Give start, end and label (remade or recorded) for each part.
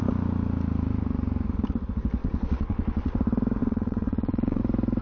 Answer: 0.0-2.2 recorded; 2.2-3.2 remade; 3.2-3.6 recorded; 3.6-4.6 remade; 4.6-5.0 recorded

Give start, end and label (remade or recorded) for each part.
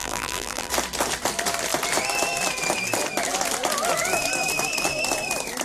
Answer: 0.0-0.7 remade; 0.7-5.6 recorded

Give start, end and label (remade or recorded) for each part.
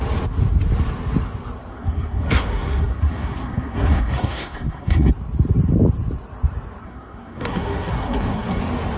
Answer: 0.0-1.7 recorded; 1.7-5.1 remade; 5.1-6.8 recorded; 6.8-8.6 remade; 8.6-9.0 recorded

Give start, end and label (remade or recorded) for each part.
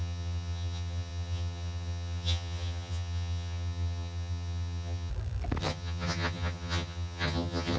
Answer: 0.0-5.1 remade; 5.1-5.6 recorded; 5.6-7.8 remade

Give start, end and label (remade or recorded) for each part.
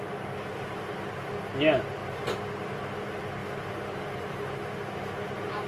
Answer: 0.0-5.7 recorded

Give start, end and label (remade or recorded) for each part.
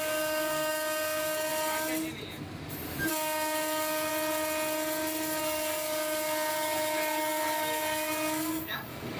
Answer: 0.0-1.5 remade; 1.5-3.1 recorded; 3.1-4.1 remade; 4.1-5.4 recorded; 5.4-9.2 remade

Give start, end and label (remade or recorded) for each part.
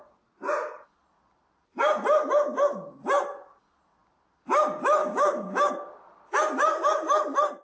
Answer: 0.0-5.0 recorded; 5.0-5.7 remade; 5.7-7.6 recorded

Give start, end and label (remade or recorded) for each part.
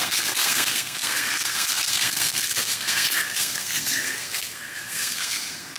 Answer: 0.0-5.8 remade